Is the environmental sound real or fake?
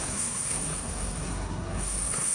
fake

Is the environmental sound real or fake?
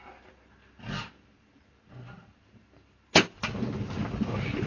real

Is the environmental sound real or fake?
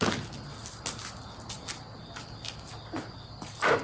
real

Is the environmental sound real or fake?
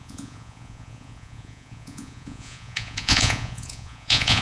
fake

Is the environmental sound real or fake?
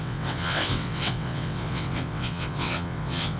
fake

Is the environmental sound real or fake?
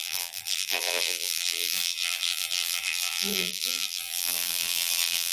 fake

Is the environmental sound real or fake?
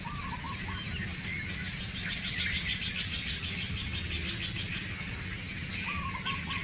real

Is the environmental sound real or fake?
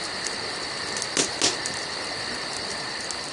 real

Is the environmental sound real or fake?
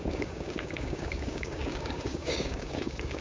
fake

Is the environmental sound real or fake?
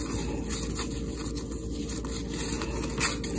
real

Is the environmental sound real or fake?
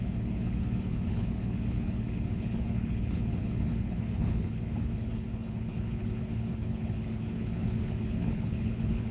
fake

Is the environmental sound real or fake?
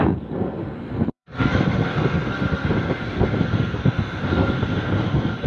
fake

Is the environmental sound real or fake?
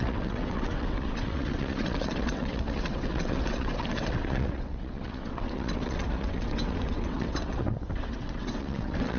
fake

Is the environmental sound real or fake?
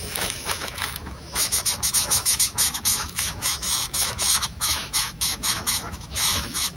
fake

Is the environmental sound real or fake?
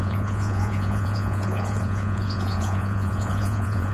fake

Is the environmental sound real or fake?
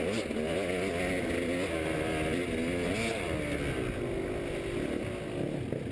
real